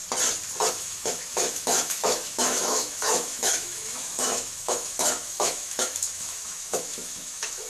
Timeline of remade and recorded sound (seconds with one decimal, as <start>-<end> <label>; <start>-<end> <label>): 0.0-0.7 recorded; 0.7-7.7 remade

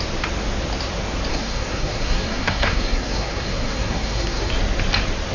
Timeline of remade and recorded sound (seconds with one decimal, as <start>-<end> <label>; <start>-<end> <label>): 0.0-1.3 recorded; 1.3-4.5 remade; 4.5-5.3 recorded

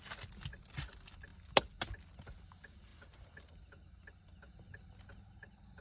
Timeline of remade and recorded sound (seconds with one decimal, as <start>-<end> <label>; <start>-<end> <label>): 0.0-5.8 recorded

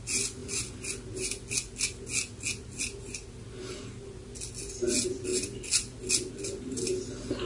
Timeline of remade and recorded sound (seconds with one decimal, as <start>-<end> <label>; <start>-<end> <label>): 0.0-7.5 recorded

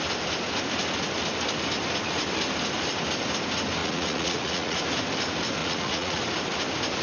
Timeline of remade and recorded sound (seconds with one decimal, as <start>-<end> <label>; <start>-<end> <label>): 0.0-3.8 recorded; 3.8-4.8 remade; 4.8-5.6 recorded; 5.6-6.2 remade; 6.2-7.0 recorded

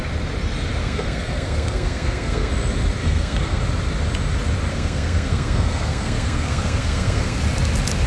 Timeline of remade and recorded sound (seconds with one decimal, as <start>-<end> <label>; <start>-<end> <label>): 0.0-0.8 recorded; 0.8-2.5 remade; 2.5-3.0 recorded; 3.0-3.6 remade; 3.6-4.7 recorded; 4.7-7.4 remade; 7.4-8.1 recorded